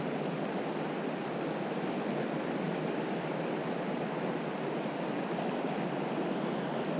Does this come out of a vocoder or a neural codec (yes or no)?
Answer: no